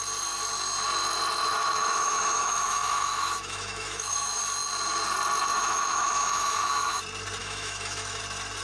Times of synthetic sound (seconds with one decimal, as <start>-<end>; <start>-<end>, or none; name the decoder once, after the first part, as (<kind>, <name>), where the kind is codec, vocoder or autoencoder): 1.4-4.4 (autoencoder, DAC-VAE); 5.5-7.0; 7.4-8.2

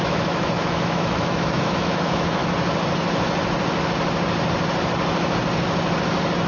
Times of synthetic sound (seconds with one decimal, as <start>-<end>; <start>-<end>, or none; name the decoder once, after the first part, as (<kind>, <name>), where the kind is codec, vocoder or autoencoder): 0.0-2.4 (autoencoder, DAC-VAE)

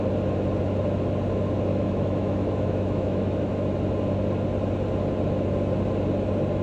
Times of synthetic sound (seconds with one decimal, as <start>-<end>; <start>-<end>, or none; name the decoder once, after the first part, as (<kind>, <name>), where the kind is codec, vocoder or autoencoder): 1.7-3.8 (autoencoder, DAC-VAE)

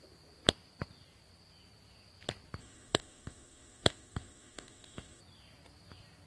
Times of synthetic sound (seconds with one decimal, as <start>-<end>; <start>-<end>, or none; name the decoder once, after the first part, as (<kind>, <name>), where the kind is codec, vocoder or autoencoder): 2.6-5.2 (autoencoder, DAC-VAE)